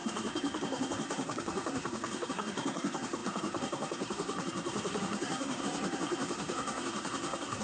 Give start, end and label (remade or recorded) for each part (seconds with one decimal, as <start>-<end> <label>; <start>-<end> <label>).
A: 0.0-7.6 remade